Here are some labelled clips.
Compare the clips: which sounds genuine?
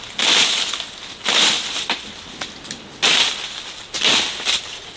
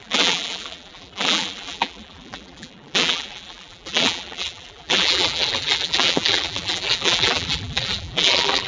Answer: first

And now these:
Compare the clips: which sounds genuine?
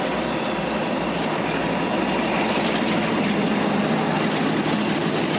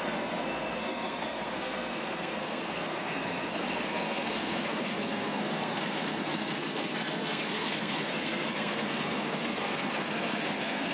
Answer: first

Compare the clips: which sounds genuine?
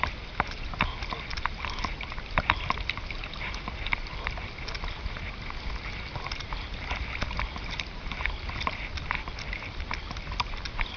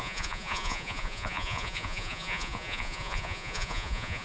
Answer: first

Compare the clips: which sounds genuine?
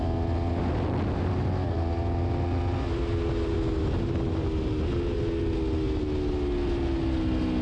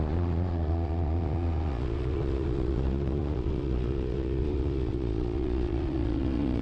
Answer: first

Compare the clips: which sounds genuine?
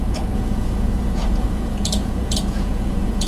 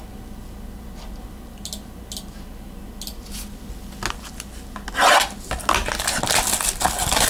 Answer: second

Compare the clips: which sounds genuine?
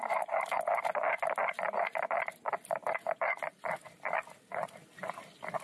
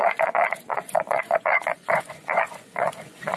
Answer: first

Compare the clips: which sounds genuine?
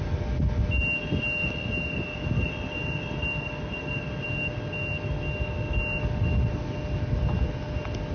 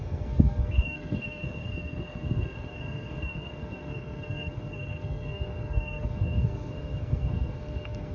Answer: first